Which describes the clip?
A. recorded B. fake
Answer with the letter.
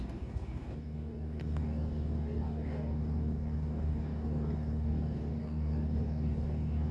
B